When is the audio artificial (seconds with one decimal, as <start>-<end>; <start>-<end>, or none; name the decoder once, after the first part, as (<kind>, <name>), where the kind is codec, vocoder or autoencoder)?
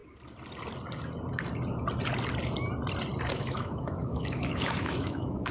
3.3-5.5 (autoencoder, DAC-VAE)